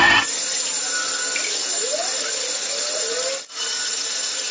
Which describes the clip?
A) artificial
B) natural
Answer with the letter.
B